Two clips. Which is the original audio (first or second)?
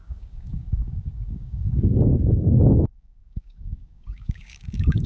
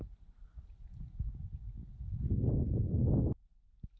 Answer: second